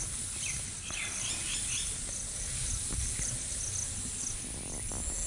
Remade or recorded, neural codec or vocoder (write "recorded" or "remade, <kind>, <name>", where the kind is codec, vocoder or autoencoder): recorded